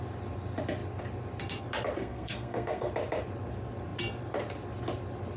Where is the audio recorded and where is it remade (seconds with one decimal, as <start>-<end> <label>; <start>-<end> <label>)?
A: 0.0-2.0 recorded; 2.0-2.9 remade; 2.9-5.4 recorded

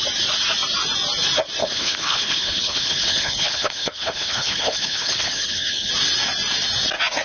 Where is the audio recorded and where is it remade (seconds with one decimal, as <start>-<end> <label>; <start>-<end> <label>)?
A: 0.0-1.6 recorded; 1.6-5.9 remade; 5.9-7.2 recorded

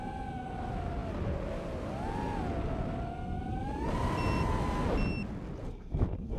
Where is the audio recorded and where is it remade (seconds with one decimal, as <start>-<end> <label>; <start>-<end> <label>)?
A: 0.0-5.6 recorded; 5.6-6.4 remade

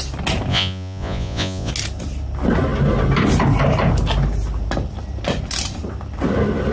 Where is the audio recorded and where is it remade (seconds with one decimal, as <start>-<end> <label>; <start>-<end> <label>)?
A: 0.0-0.5 recorded; 0.5-1.7 remade; 1.7-6.7 recorded

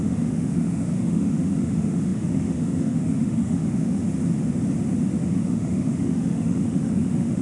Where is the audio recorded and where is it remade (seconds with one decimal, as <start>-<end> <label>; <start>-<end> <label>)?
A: 0.0-4.0 remade; 4.0-5.3 recorded; 5.3-7.4 remade

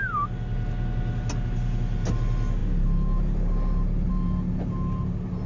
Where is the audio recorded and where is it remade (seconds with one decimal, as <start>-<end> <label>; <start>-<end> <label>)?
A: 0.0-5.5 recorded

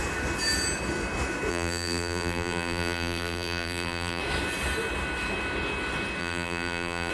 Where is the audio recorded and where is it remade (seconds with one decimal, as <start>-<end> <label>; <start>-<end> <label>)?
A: 0.0-1.5 recorded; 1.5-4.2 remade; 4.2-6.2 recorded; 6.2-7.1 remade